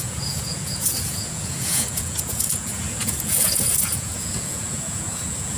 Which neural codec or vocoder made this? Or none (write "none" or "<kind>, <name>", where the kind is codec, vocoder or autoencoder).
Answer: vocoder, Vocos